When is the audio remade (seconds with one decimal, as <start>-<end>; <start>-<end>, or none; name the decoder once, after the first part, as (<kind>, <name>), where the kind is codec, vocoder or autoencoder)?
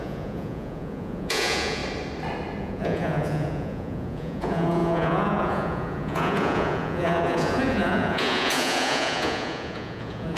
0.0-1.8 (vocoder, Vocos); 2.6-10.4